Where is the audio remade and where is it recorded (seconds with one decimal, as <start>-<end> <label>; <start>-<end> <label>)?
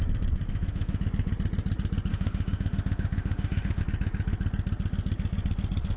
0.0-0.5 recorded; 0.5-1.0 remade; 1.0-2.1 recorded; 2.1-3.8 remade; 3.8-6.0 recorded